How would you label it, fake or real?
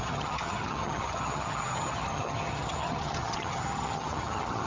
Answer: fake